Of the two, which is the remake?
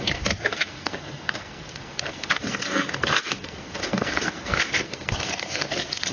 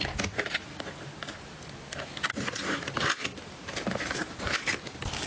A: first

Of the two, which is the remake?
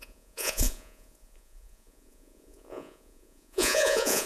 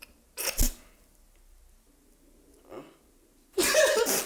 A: first